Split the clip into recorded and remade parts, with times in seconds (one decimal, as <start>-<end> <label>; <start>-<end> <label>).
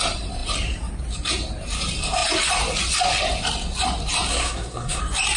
0.0-4.3 recorded; 4.3-5.0 remade; 5.0-5.4 recorded